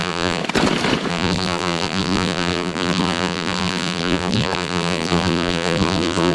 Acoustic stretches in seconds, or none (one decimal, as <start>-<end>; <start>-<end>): 0.4-1.1